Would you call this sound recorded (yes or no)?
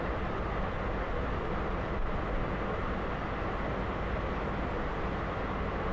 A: yes